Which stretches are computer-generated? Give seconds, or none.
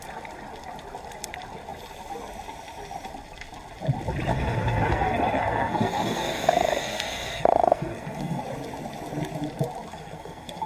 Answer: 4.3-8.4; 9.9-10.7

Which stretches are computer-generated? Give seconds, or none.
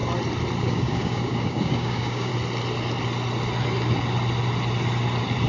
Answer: 0.6-2.3